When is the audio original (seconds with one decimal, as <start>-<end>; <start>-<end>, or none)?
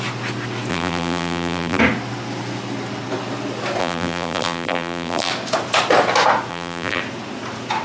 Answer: 0.0-0.7; 1.8-3.8; 5.3-6.5; 7.0-7.8